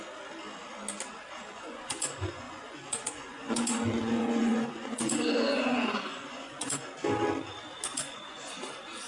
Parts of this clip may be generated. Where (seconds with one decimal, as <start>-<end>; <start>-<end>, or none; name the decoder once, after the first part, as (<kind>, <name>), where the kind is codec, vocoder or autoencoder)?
1.5-6.8 (vocoder, Vocos); 7.9-8.5